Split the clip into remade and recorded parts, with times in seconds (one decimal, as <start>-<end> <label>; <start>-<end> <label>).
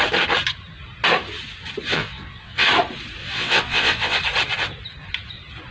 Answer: 0.0-1.9 recorded; 1.9-2.7 remade; 2.7-3.2 recorded; 3.2-4.2 remade; 4.2-5.7 recorded